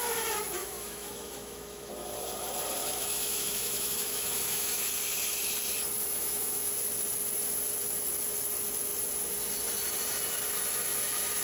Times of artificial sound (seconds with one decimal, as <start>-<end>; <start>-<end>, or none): 0.6-1.9; 2.8-4.8; 6.0-6.7